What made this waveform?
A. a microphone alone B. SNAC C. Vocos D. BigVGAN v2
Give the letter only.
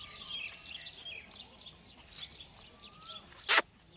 A